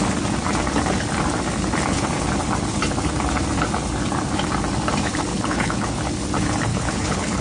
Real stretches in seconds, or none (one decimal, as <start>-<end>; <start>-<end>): 0.0-5.3; 5.9-6.7